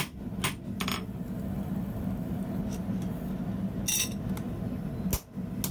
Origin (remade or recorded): recorded